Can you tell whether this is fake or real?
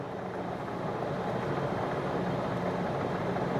real